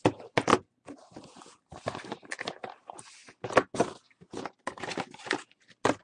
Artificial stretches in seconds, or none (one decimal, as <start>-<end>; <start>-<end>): none